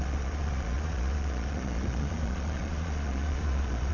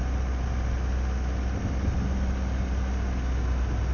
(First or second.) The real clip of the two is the second